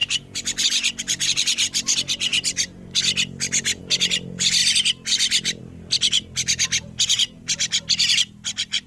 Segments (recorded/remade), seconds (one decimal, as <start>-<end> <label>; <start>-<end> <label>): 0.0-8.9 recorded